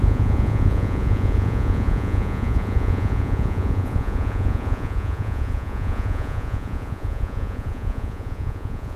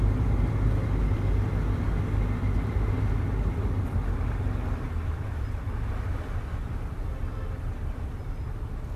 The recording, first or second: second